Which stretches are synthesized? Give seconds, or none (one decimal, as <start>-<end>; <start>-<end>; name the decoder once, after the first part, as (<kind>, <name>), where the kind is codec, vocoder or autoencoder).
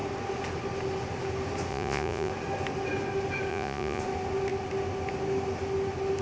1.7-2.3 (vocoder, Vocos); 3.5-4.0